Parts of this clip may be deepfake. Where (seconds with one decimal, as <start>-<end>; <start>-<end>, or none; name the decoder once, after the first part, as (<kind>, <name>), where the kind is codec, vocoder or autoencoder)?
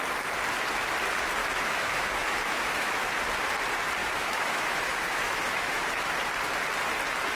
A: 1.4-3.1 (autoencoder, DAC-VAE); 4.0-6.1